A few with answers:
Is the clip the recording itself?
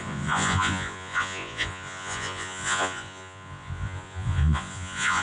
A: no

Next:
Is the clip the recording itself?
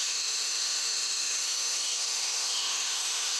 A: no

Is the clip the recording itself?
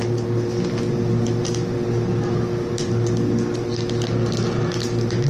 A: yes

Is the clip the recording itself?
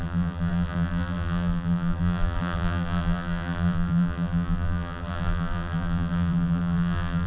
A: no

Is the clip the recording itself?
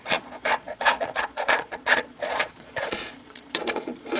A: no